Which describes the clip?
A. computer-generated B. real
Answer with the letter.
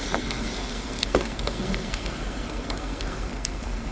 A